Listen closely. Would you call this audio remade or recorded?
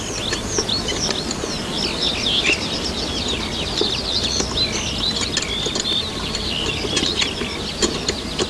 recorded